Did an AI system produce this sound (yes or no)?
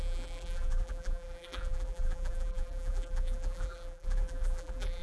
yes